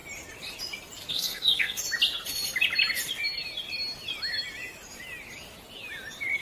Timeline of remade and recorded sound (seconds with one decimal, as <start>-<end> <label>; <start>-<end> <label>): 0.0-1.1 recorded; 1.1-1.8 remade; 1.8-6.4 recorded